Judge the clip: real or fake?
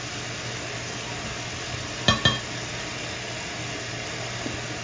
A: real